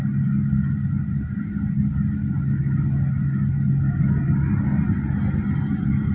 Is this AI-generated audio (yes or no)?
no